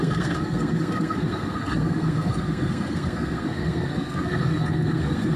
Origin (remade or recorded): remade